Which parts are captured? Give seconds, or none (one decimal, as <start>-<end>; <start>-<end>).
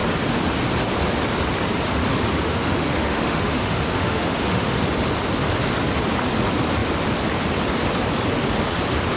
0.0-2.1; 4.8-9.2